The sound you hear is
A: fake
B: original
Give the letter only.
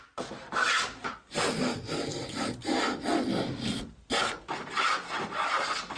B